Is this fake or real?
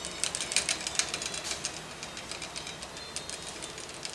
real